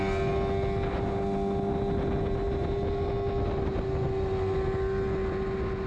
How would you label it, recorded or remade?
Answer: recorded